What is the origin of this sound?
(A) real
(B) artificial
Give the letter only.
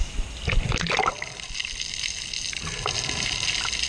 A